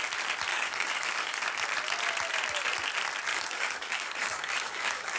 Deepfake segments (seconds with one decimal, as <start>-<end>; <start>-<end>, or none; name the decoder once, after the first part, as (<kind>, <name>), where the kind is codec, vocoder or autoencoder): 0.5-1.4 (codec, DAC); 3.3-5.2